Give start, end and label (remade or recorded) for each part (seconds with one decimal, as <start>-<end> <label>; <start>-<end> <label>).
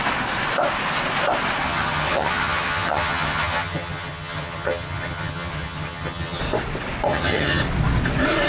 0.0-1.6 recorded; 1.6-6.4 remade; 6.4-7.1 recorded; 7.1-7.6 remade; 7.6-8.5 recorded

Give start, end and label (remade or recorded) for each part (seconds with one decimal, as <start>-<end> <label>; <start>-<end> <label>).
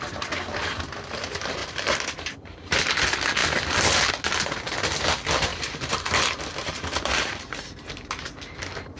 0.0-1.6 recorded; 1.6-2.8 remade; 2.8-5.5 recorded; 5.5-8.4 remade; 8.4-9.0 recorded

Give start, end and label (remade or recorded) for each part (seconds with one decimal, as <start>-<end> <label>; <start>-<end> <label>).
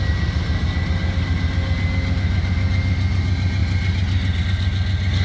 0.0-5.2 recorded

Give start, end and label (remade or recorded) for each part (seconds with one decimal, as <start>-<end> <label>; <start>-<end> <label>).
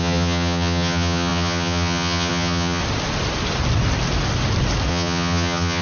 0.0-2.8 remade; 2.8-4.9 recorded; 4.9-5.8 remade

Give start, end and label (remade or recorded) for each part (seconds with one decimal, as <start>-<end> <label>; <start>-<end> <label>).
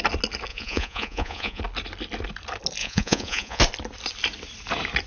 0.0-0.5 recorded; 0.5-1.6 remade; 1.6-2.8 recorded; 2.8-3.6 remade; 3.6-5.1 recorded